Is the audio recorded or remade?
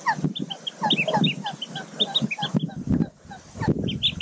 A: recorded